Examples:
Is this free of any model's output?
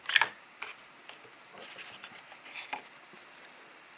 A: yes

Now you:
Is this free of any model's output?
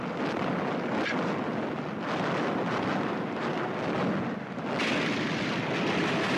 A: no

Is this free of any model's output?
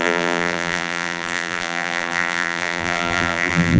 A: no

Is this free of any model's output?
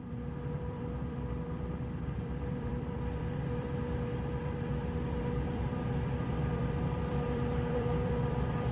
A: no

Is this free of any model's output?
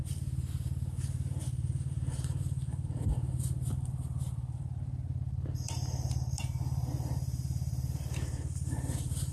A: no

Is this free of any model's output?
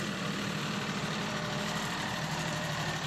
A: no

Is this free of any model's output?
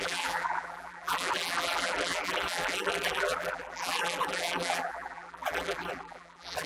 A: no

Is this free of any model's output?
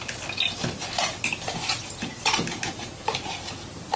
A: yes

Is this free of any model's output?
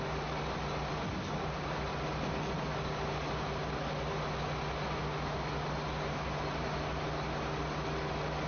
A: yes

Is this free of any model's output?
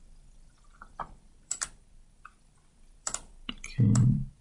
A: no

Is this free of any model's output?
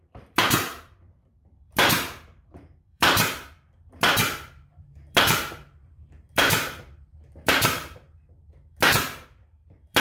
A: no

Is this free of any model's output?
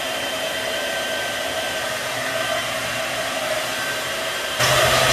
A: no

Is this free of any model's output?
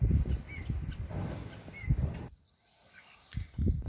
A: yes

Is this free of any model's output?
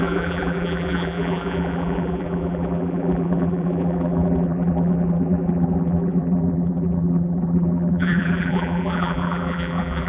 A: no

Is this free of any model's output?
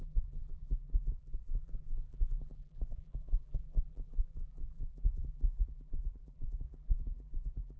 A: no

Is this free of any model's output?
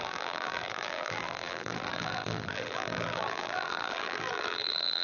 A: no